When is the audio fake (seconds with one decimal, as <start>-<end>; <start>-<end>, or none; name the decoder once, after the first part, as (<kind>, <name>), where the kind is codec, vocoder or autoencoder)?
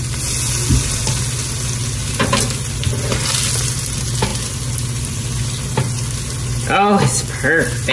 none